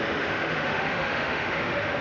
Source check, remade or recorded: remade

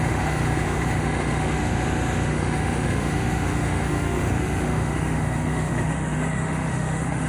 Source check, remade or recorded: remade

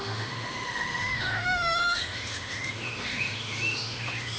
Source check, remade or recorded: remade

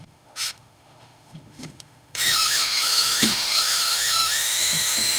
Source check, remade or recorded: remade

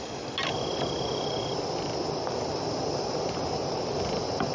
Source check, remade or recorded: recorded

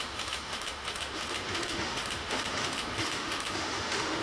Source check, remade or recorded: remade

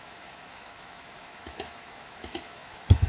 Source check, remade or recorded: remade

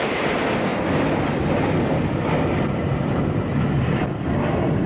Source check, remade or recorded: recorded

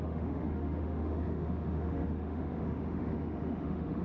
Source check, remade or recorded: remade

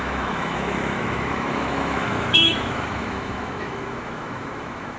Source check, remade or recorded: remade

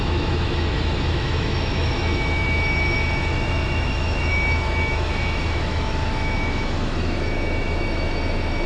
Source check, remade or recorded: remade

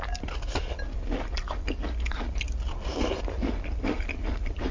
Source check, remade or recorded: recorded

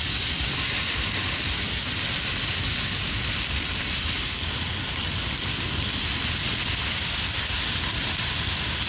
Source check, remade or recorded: recorded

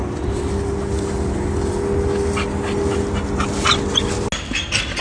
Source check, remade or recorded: recorded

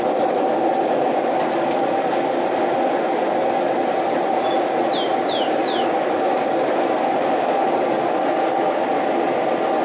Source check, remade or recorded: recorded